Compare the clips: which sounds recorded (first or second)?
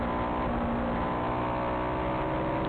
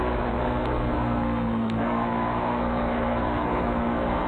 first